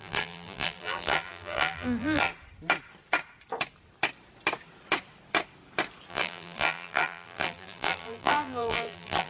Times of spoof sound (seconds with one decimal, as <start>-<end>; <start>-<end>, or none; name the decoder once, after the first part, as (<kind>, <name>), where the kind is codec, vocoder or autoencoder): 0.0-2.3 (vocoder, BigVGAN v2); 6.1-9.3